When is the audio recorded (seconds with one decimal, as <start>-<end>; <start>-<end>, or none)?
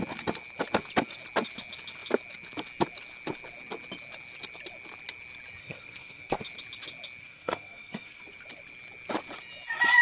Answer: 0.0-5.6; 6.4-7.2; 8.2-10.0